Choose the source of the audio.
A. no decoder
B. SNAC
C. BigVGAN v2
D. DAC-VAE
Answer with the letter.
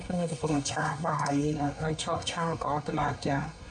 B